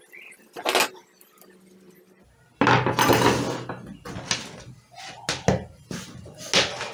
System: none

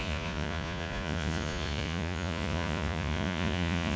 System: vocoder, Vocos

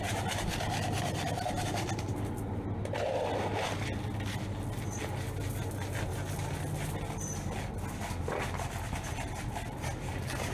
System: none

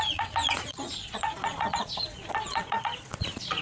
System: vocoder, Vocos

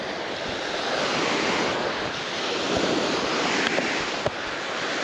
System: none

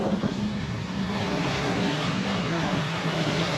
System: codec, SNAC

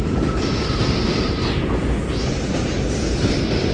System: none